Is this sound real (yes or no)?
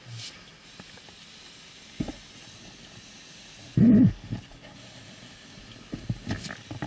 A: yes